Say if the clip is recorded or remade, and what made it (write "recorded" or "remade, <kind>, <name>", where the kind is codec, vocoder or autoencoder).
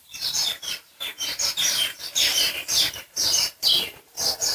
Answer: remade, vocoder, BigVGAN v2